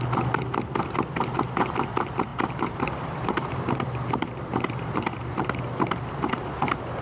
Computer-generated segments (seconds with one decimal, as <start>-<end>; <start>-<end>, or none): 2.3-6.4